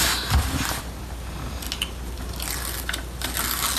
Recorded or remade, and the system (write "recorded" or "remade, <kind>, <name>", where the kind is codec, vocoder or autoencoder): recorded